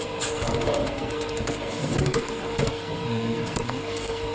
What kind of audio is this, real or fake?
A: fake